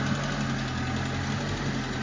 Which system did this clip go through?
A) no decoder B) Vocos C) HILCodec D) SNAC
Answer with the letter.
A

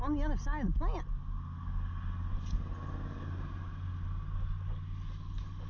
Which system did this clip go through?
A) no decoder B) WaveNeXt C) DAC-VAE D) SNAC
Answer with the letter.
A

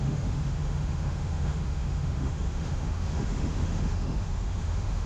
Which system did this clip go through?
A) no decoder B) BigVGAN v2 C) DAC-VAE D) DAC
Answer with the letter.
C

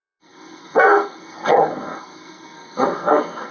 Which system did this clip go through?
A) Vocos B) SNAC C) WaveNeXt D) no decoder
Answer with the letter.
B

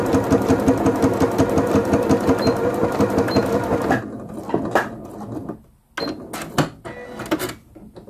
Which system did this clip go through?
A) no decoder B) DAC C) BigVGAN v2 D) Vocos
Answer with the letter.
A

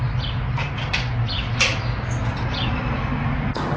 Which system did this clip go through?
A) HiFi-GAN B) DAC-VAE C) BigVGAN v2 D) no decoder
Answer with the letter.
D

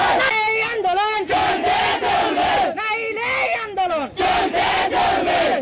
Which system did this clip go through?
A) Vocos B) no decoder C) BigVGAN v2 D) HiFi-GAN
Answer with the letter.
B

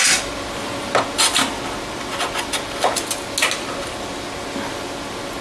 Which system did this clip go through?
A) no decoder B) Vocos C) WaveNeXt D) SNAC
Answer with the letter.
A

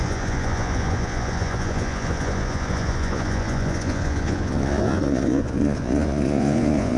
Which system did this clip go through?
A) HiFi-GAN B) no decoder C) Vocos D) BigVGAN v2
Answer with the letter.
C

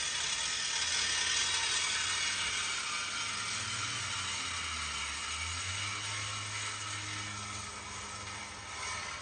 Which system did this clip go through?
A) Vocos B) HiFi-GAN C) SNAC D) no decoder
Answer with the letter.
D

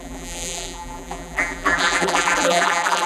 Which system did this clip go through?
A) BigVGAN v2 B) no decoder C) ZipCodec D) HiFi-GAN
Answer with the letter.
A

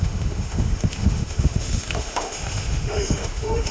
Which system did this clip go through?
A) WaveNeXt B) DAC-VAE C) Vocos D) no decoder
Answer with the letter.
B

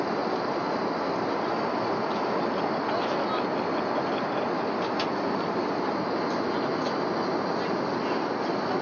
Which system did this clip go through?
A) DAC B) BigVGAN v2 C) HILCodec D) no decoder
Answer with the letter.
D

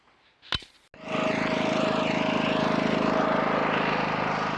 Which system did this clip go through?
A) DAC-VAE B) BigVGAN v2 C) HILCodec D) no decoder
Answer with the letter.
D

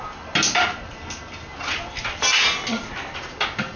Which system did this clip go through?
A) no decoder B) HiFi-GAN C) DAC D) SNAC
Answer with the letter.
A